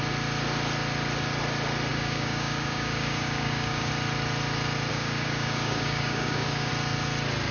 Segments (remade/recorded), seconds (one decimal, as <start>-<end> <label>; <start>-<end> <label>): 0.0-1.9 recorded; 1.9-3.9 remade; 3.9-4.9 recorded; 4.9-6.7 remade; 6.7-7.5 recorded